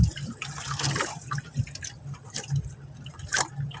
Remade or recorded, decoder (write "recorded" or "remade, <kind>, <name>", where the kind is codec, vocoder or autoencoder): remade, vocoder, BigVGAN v2